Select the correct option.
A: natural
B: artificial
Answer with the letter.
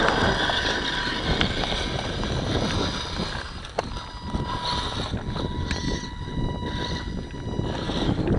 A